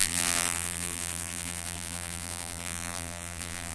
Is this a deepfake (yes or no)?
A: yes